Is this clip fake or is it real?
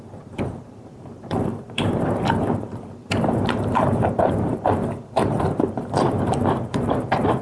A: fake